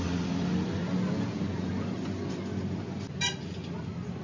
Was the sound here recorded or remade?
recorded